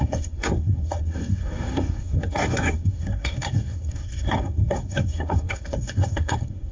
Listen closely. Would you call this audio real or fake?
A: fake